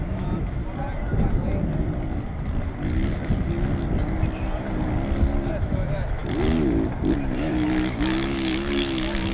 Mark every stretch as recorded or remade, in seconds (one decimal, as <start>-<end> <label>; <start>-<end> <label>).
0.0-0.6 remade; 0.6-5.6 recorded; 5.6-6.2 remade; 6.2-7.4 recorded; 7.4-9.3 remade

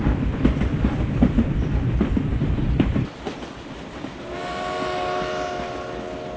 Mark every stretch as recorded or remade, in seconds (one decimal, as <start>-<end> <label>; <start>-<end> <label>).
0.0-6.4 recorded